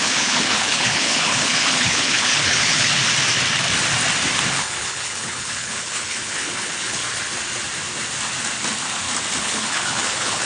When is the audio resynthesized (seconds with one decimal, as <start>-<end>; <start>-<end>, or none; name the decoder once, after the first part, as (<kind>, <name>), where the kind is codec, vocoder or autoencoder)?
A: 0.0-3.0 (codec, HILCodec); 4.5-7.0; 9.4-10.5

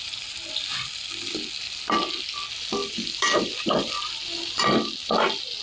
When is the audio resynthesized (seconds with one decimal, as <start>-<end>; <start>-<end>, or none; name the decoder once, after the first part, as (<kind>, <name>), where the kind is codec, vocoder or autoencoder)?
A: 2.8-4.6 (vocoder, BigVGAN v2)

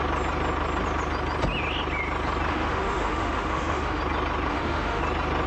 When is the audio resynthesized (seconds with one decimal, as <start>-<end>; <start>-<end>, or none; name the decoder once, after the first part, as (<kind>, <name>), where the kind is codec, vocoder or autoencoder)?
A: 2.5-4.0 (autoencoder, DAC-VAE); 4.5-5.0

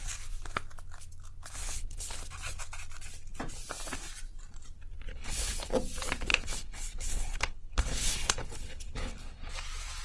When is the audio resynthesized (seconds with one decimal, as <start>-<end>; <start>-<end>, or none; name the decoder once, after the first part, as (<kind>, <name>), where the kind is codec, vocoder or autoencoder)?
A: 1.6-2.2 (codec, HILCodec); 5.1-5.7; 6.3-9.5